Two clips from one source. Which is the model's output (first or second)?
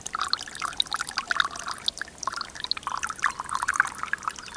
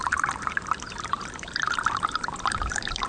second